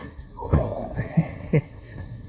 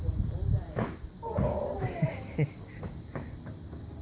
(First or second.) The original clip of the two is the second